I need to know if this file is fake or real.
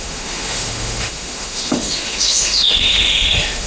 fake